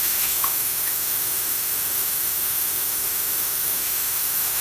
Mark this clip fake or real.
fake